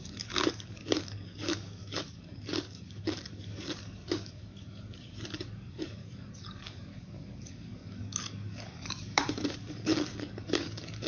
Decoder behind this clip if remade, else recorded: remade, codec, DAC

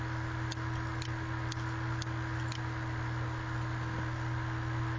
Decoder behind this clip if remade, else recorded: recorded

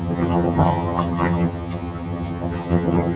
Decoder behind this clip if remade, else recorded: remade, vocoder, HiFi-GAN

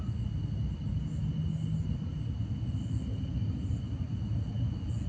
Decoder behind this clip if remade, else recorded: recorded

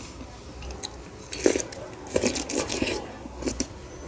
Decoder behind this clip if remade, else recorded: recorded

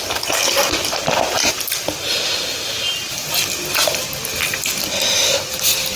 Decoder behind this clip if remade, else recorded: recorded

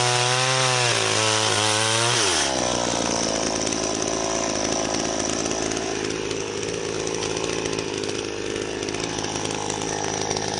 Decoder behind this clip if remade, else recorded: recorded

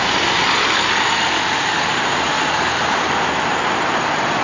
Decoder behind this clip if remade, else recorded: recorded